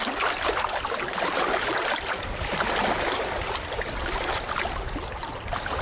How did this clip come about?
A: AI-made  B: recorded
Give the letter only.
A